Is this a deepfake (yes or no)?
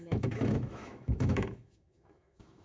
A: yes